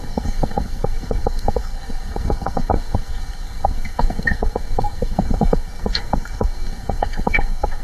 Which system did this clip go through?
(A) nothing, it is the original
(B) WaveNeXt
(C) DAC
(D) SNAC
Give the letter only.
D